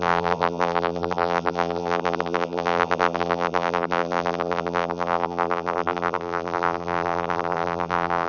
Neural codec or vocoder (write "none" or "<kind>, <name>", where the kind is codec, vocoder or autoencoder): vocoder, BigVGAN v2